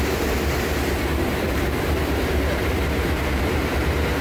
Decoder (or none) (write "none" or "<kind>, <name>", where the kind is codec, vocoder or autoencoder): vocoder, BigVGAN v2